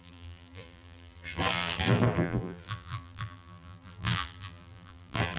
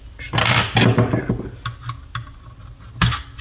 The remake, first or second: first